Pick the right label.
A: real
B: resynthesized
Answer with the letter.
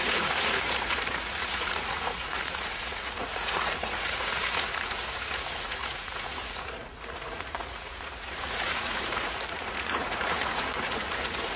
B